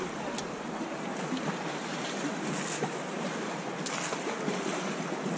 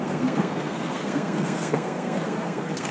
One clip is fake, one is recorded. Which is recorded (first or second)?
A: first